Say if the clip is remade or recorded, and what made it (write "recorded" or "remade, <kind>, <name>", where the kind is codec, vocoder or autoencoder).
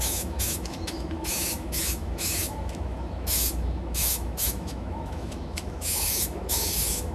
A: remade, autoencoder, DAC-VAE